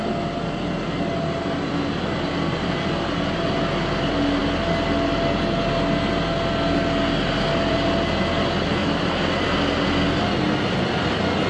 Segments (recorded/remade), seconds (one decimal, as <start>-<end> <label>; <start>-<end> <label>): 0.0-11.5 recorded